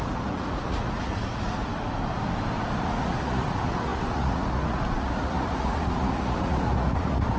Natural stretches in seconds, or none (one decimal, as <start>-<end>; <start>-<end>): 1.7-2.8